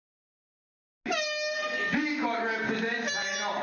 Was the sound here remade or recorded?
recorded